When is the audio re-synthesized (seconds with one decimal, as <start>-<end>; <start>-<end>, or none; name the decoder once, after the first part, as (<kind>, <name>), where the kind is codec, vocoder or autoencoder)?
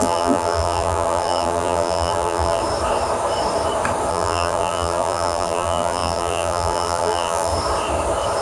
0.0-2.6 (vocoder, BigVGAN v2); 4.1-7.5